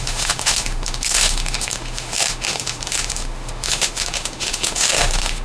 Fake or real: fake